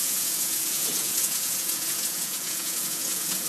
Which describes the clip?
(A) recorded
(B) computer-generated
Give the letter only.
B